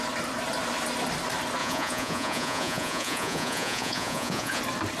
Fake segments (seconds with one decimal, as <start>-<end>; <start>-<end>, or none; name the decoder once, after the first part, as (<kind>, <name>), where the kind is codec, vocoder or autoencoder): 1.6-4.6 (vocoder, Vocos)